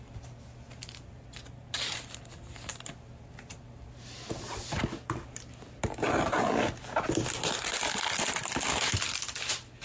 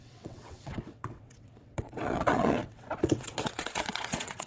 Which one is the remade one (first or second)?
second